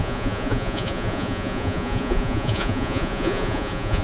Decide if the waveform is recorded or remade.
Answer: remade